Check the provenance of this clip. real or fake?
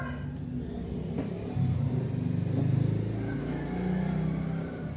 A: real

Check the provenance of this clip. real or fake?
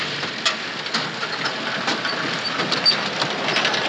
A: real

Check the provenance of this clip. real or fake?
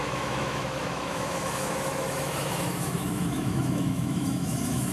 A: fake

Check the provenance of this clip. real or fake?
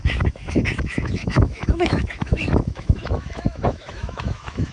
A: fake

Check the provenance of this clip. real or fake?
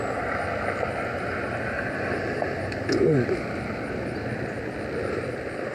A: real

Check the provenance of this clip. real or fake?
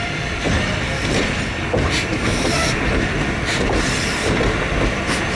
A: real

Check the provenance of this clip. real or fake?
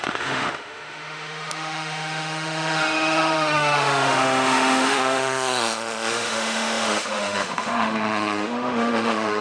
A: fake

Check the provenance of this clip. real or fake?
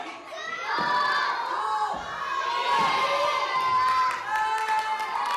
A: real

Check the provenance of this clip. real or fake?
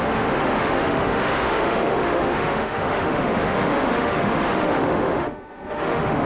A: fake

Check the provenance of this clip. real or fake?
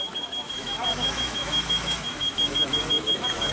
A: fake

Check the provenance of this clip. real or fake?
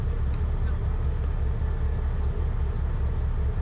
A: real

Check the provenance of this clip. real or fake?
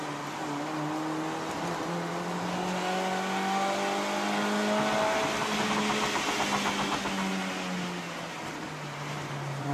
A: real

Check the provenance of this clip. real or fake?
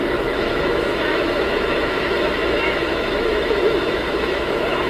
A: fake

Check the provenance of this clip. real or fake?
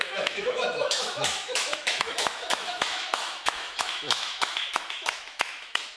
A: fake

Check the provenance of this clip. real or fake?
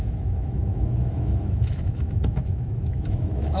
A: fake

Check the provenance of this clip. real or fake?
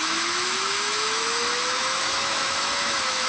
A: fake